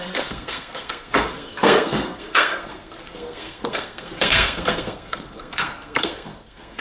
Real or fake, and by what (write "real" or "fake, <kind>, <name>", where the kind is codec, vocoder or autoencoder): fake, codec, SNAC